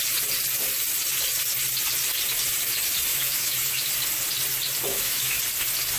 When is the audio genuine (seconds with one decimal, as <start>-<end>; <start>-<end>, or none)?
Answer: 0.0-3.1; 3.9-4.9; 5.4-6.0